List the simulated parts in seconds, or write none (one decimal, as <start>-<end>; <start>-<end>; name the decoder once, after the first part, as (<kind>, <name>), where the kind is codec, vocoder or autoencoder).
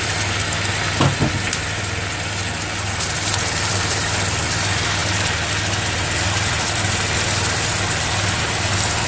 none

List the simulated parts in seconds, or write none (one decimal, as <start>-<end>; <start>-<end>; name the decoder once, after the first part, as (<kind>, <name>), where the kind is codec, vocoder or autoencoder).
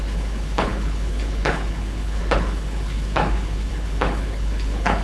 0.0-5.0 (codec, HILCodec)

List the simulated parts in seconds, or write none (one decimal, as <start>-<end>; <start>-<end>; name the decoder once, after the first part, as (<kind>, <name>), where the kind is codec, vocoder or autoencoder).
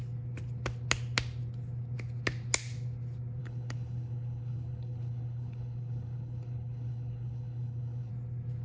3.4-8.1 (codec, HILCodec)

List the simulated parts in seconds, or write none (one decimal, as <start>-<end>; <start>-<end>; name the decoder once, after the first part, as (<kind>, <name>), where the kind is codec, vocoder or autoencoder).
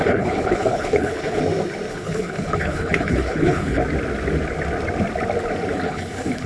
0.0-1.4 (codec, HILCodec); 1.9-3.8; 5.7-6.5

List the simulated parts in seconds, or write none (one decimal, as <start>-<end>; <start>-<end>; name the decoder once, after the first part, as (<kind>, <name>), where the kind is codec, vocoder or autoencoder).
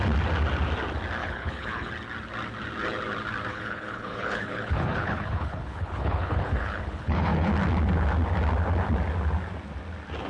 1.2-1.9 (codec, HILCodec); 3.5-7.5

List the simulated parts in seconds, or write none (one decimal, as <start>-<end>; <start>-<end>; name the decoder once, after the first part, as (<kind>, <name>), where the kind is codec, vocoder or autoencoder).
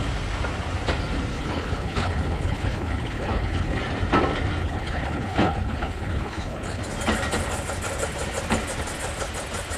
1.3-3.8 (codec, HILCodec); 4.6-6.8